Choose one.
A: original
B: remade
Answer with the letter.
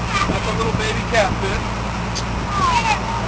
A